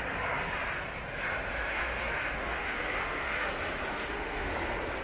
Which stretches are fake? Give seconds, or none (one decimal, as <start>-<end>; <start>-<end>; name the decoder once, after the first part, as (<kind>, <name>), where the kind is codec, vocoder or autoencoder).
1.5-3.5 (autoencoder, DAC-VAE); 3.9-4.5